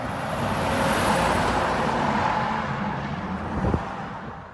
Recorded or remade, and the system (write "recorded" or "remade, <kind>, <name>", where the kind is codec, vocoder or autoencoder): recorded